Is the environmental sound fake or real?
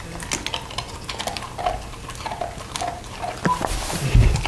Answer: real